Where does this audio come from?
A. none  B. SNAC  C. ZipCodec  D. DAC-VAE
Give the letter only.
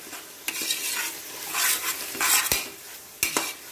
A